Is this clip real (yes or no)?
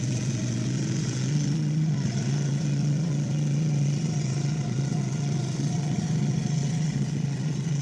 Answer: no